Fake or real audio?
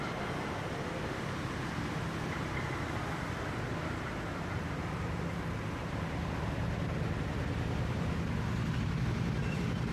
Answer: fake